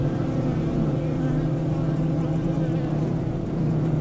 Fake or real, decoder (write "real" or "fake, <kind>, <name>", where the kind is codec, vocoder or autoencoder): fake, vocoder, BigVGAN v2